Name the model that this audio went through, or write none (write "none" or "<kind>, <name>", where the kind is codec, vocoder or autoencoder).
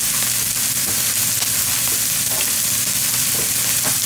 none